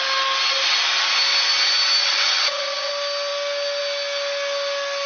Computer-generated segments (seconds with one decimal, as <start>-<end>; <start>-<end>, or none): 2.0-2.9